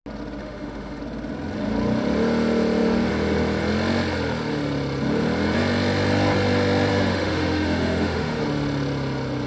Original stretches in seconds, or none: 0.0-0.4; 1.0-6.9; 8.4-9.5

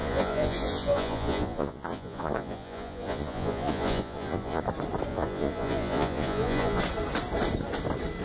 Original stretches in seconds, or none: 4.6-5.1; 6.8-8.2

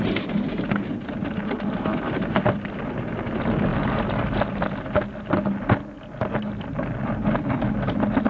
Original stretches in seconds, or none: 0.0-8.3

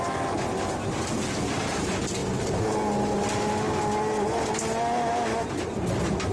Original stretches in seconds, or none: 0.0-6.3

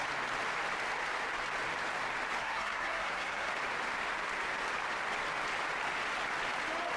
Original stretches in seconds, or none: 0.0-2.4; 3.5-7.0

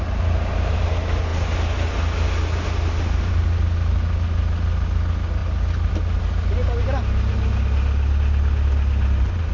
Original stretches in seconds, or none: 0.0-9.5

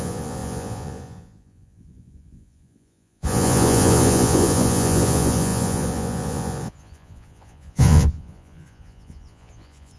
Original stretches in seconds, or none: none